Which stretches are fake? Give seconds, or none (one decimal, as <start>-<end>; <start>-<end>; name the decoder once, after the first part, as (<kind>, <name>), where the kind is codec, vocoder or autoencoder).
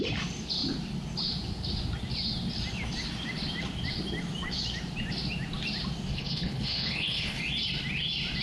6.1-7.4 (codec, HILCodec)